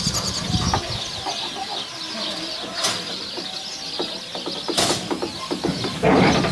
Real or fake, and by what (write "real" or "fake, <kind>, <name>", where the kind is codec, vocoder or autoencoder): real